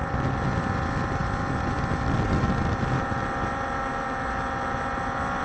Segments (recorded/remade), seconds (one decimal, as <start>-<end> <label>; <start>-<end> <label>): 0.0-5.4 recorded